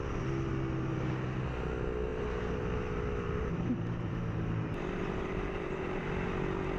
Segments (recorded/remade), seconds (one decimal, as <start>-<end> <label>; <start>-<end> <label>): 0.0-2.1 recorded; 2.1-6.0 remade; 6.0-6.8 recorded